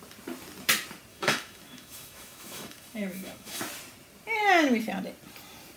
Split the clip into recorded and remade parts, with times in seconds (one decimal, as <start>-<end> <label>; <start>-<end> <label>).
0.0-1.1 recorded; 1.1-3.6 remade; 3.6-5.8 recorded